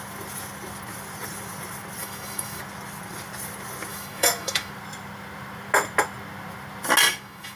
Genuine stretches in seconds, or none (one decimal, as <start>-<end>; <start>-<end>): 0.0-2.0; 2.6-3.9; 4.7-7.1